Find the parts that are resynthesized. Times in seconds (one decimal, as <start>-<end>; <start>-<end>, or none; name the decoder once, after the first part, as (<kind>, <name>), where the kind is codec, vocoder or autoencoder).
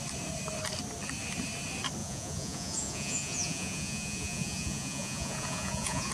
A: 2.0-6.1 (vocoder, Vocos)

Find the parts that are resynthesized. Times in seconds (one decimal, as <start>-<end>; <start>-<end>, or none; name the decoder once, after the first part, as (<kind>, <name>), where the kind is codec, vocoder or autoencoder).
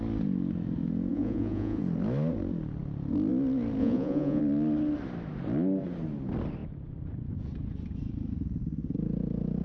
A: 1.1-1.8 (vocoder, Vocos); 3.8-4.4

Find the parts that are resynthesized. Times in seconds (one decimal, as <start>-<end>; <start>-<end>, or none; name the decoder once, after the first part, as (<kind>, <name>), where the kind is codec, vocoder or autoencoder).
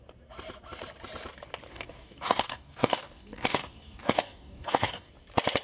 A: 1.7-5.1 (codec, DAC)